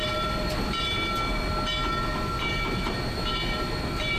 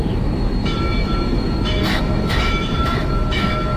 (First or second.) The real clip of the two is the first